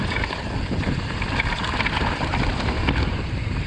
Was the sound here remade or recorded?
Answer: remade